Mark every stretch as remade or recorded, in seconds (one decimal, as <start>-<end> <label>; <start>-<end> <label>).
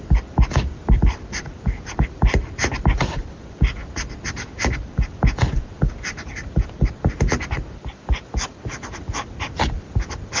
0.0-10.4 recorded